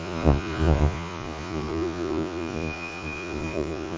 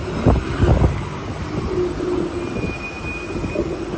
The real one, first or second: second